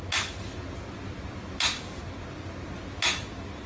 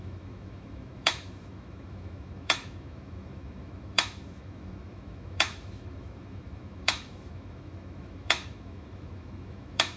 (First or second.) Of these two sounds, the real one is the first